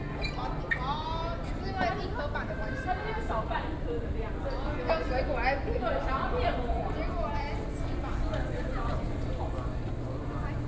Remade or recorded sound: recorded